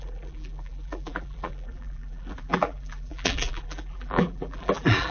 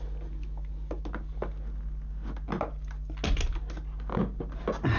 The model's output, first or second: first